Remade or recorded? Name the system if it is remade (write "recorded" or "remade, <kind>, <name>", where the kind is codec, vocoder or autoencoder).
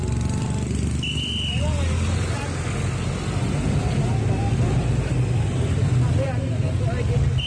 recorded